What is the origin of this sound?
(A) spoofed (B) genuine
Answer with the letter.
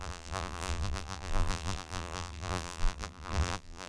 A